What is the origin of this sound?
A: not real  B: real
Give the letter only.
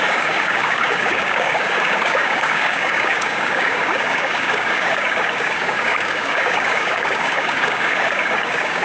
A